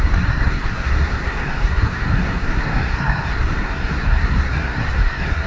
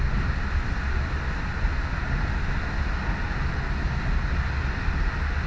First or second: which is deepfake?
first